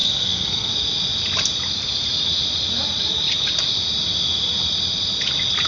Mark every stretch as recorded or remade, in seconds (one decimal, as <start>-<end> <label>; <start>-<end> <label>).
0.0-0.7 remade; 0.7-5.7 recorded